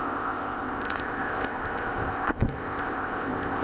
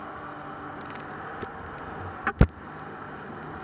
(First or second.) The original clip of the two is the second